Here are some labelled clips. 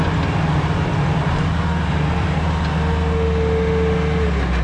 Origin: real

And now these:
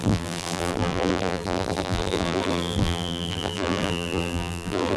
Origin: fake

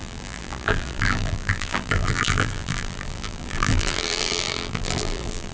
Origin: fake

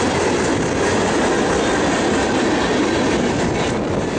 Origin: real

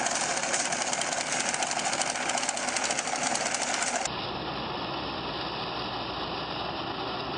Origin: real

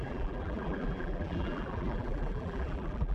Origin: fake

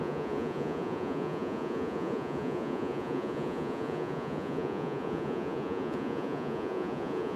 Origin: fake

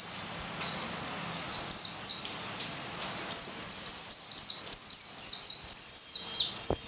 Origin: real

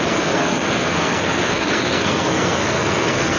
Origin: fake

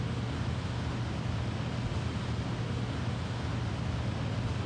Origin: real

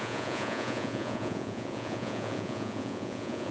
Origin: fake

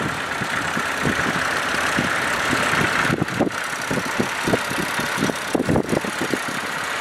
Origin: real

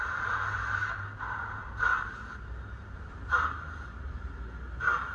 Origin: fake